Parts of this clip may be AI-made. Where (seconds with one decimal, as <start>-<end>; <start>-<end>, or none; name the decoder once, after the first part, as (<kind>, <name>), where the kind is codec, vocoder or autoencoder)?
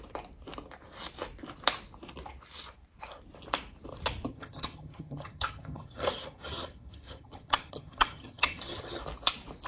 4.3-9.0 (vocoder, HiFi-GAN)